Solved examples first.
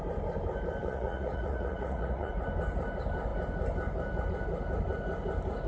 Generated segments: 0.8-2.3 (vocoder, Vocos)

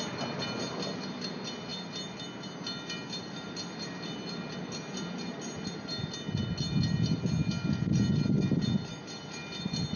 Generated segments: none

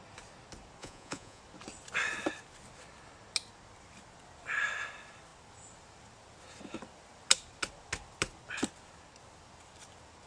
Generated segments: 0.8-1.4 (vocoder, Vocos)